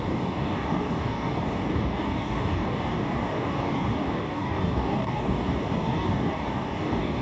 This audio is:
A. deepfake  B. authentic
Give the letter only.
A